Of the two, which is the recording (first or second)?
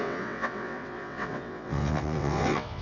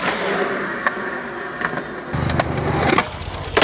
second